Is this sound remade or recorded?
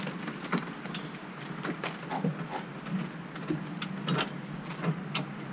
recorded